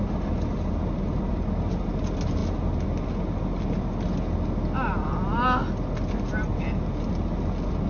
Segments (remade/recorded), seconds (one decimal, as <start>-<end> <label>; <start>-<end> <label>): 0.0-7.9 recorded